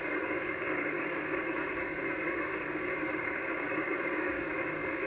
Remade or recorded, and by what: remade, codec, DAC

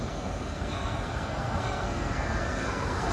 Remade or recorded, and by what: remade, codec, SNAC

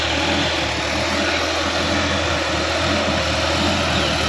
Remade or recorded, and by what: recorded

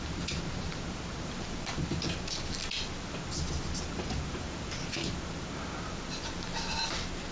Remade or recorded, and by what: recorded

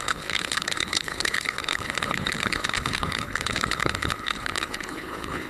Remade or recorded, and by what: remade, codec, HILCodec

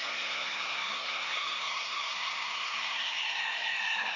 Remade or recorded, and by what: remade, codec, SNAC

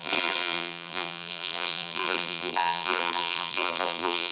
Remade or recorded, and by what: remade, vocoder, BigVGAN v2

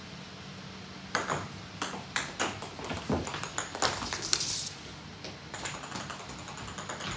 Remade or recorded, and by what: recorded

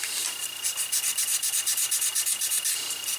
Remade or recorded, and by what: recorded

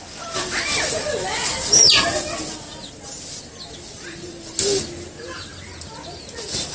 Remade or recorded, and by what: recorded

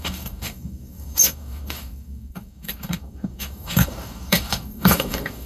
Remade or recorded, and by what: remade, codec, DAC